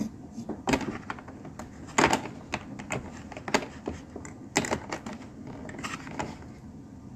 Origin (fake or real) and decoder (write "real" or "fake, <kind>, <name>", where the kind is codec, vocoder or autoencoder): real